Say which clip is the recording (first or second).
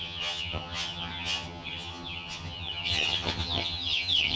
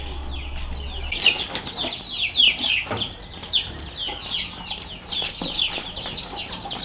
second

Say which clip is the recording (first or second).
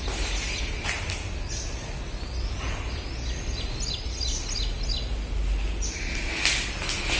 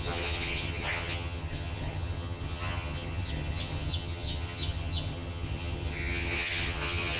first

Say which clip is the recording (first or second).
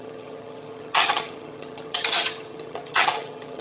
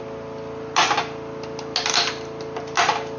second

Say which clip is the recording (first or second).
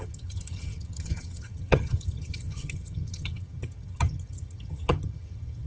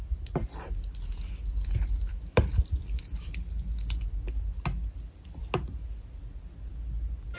second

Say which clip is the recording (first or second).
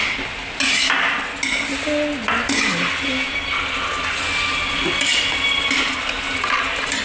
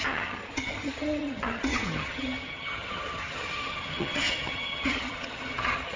first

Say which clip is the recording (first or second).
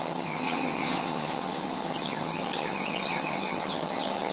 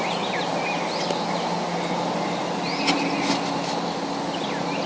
second